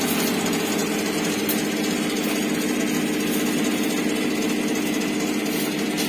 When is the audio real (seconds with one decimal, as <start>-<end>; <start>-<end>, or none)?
0.0-6.1